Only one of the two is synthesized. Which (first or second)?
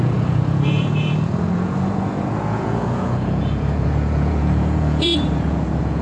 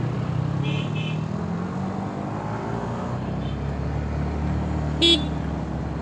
first